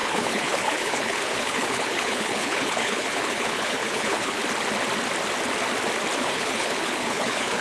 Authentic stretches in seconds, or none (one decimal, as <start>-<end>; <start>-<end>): 4.4-6.2

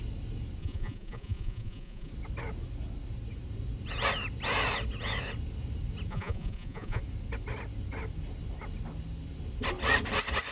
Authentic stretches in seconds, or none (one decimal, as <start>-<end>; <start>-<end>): 0.0-0.6; 2.1-6.1; 7.0-10.5

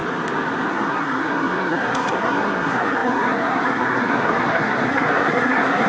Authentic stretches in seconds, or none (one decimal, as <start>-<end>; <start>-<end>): 0.0-0.7

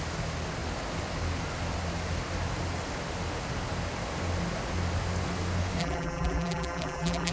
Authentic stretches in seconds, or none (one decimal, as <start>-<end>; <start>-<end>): 0.0-5.8

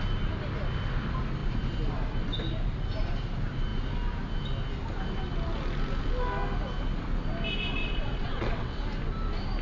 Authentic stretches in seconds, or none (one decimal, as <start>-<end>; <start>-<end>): 0.0-7.8; 8.8-9.6